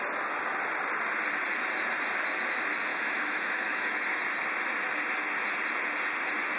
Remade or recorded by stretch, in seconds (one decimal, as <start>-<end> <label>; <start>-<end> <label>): 0.0-2.9 recorded; 2.9-4.0 remade; 4.0-6.6 recorded